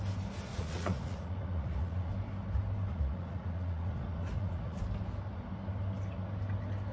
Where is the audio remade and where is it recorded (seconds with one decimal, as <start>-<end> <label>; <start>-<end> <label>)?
0.0-0.5 recorded; 0.5-2.1 remade; 2.1-2.9 recorded; 2.9-4.8 remade; 4.8-6.9 recorded